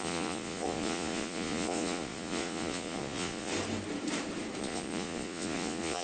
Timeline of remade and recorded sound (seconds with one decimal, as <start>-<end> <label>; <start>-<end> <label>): 0.0-3.5 remade; 3.5-4.6 recorded; 4.6-6.0 remade